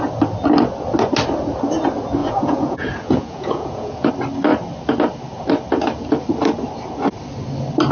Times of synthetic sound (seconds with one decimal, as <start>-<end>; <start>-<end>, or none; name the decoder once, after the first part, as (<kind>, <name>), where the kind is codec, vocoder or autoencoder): 2.2-4.1 (vocoder, Vocos)